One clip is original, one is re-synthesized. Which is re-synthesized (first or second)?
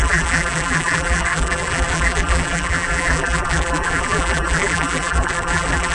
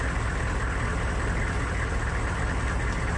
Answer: first